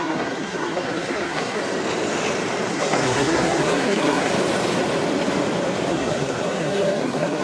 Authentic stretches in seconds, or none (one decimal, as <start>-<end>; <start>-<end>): 1.6-2.7; 4.3-5.9